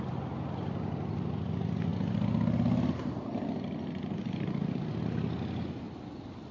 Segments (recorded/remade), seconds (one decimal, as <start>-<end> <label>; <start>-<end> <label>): 0.0-6.5 recorded